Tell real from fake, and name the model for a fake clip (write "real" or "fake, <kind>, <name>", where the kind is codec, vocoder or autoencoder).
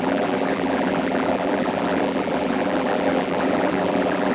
fake, vocoder, BigVGAN v2